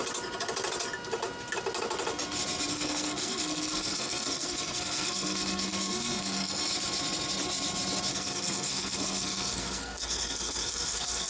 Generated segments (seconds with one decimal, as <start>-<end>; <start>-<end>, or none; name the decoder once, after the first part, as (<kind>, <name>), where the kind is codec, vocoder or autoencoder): 2.7-6.7 (codec, SNAC); 8.1-11.3